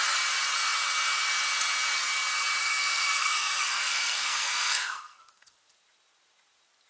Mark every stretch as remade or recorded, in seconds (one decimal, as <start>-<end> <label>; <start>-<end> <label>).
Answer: 0.0-2.6 recorded; 2.6-5.6 remade; 5.6-6.9 recorded